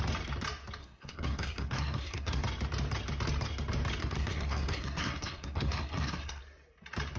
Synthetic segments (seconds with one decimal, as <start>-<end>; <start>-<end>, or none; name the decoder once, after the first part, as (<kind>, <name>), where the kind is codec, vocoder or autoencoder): 0.8-2.4 (codec, SNAC); 4.0-6.4